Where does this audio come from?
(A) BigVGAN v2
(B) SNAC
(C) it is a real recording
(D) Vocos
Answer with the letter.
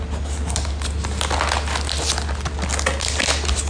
C